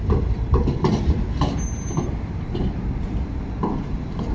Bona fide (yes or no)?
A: yes